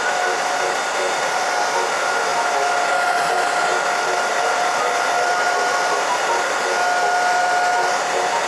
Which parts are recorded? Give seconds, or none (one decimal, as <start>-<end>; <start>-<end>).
0.0-8.5